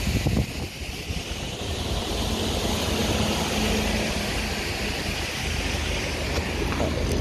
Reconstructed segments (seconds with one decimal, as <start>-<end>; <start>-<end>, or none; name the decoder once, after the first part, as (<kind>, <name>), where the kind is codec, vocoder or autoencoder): none